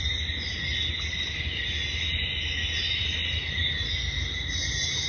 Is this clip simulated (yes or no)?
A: no